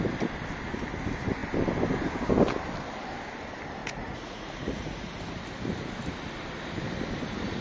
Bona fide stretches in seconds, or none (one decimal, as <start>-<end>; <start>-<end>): 0.0-3.8; 5.2-7.6